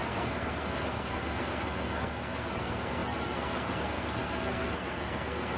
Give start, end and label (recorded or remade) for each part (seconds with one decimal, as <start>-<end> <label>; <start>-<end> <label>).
0.0-5.6 remade